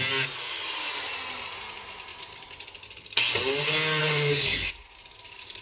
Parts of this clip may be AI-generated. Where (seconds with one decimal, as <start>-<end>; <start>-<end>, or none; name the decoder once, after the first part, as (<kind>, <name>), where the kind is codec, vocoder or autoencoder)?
4.0-4.7 (codec, SNAC)